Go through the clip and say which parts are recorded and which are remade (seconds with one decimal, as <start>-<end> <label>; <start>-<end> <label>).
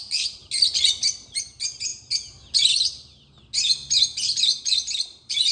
0.0-5.5 recorded